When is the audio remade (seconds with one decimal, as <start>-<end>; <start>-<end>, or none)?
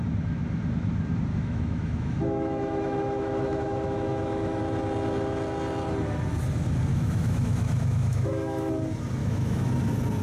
1.3-4.6; 6.9-8.7; 9.2-9.7